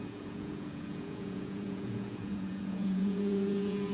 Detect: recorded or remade remade